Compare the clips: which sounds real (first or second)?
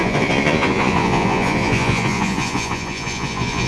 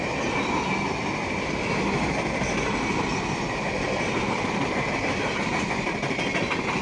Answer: second